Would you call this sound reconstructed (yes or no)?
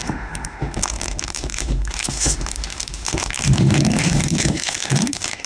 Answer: yes